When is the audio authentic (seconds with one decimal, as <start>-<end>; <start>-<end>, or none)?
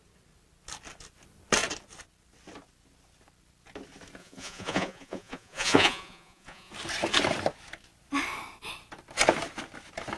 0.0-4.2; 6.7-10.2